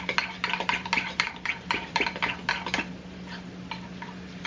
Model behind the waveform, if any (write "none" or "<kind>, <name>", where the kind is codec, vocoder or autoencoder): none